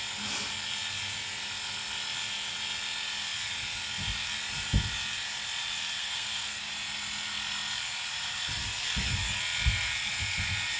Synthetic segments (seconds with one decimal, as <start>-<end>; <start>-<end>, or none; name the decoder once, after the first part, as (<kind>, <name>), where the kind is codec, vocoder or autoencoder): 6.0-6.6 (codec, SNAC)